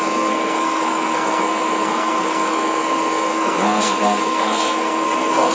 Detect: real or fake fake